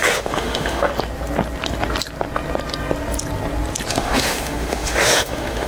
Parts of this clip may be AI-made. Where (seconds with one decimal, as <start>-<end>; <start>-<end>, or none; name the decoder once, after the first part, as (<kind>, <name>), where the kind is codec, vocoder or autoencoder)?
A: 0.0-0.9 (autoencoder, DAC-VAE); 3.9-5.7